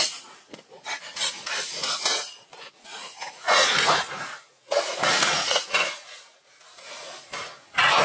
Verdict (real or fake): fake